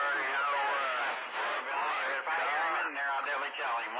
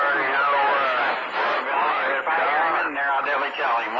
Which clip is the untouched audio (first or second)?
first